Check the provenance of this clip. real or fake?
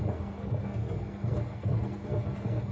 fake